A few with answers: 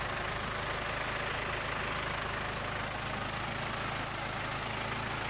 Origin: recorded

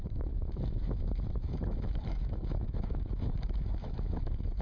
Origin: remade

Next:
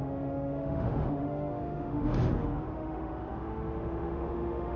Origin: remade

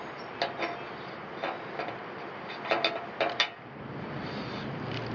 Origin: recorded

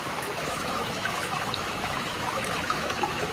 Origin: remade